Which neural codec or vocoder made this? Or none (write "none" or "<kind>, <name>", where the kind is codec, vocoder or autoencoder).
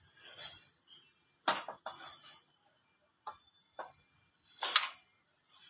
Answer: none